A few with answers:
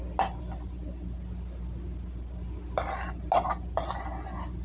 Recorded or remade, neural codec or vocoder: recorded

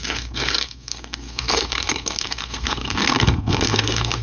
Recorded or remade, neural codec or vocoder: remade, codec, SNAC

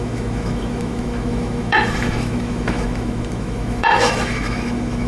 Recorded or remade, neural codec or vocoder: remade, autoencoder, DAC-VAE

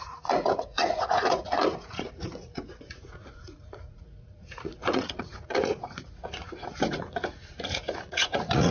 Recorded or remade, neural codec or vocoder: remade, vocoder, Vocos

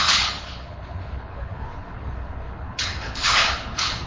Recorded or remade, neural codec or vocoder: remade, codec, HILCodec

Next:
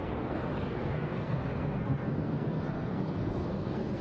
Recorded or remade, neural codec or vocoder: remade, codec, SNAC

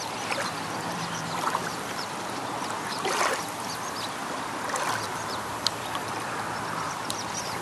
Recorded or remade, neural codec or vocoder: remade, vocoder, BigVGAN v2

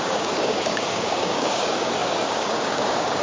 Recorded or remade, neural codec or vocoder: remade, codec, DAC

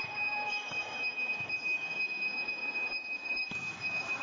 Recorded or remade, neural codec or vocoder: remade, autoencoder, DAC-VAE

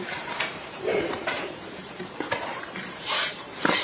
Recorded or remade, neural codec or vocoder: remade, vocoder, BigVGAN v2